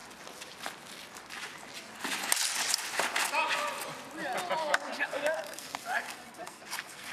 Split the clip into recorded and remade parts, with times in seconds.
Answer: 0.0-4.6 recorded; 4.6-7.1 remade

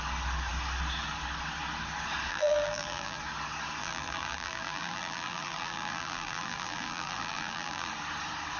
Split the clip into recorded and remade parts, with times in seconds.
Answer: 0.0-2.3 recorded; 2.3-3.2 remade; 3.2-3.8 recorded; 3.8-7.9 remade; 7.9-8.6 recorded

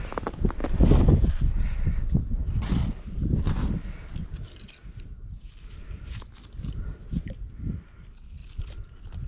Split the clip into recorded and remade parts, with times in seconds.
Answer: 0.0-9.3 recorded